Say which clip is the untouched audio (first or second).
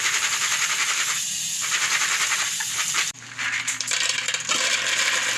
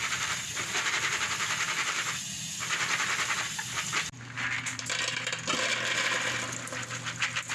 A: second